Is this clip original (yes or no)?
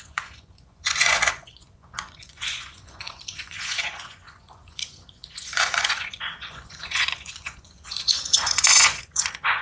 no